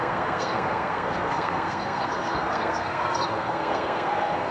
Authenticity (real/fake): fake